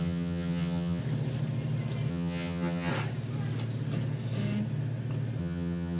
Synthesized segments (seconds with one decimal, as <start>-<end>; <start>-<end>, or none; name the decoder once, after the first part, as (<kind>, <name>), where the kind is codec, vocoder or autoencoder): 0.0-1.0 (vocoder, HiFi-GAN); 2.1-2.9; 5.4-6.0